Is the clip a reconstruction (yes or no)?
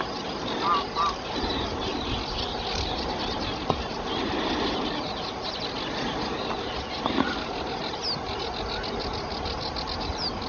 no